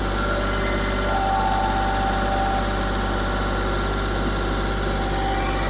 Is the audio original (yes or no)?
yes